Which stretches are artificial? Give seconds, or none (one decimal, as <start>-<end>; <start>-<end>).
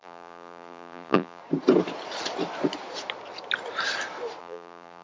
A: 0.0-1.4; 4.4-5.0